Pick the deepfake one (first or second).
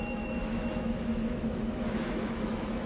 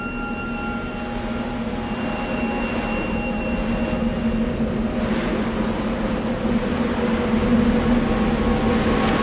first